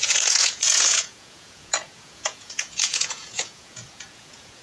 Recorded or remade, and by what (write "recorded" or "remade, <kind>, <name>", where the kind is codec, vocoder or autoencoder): remade, vocoder, Vocos